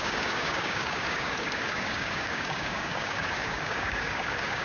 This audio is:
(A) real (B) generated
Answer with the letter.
B